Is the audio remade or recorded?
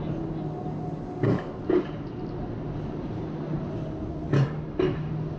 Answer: recorded